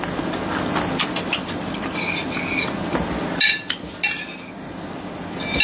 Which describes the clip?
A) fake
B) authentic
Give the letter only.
B